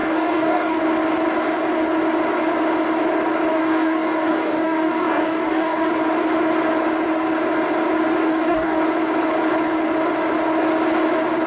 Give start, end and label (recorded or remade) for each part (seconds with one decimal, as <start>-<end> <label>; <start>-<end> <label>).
0.0-0.8 remade; 0.8-3.5 recorded; 3.5-5.9 remade; 5.9-8.2 recorded; 8.2-8.8 remade; 8.8-11.5 recorded

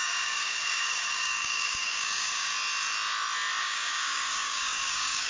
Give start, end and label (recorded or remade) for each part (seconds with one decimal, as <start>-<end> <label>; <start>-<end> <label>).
0.0-2.5 remade; 2.5-3.6 recorded; 3.6-5.3 remade

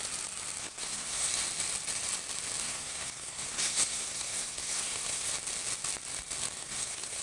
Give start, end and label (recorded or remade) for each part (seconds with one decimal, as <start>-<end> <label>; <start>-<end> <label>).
0.0-0.6 recorded; 0.6-1.3 remade; 1.3-2.6 recorded; 2.6-5.3 remade; 5.3-6.6 recorded; 6.6-7.2 remade

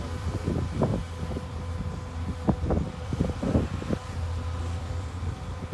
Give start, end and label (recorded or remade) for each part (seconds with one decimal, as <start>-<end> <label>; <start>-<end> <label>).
0.0-0.9 remade; 0.9-2.9 recorded; 2.9-4.0 remade; 4.0-4.8 recorded; 4.8-5.7 remade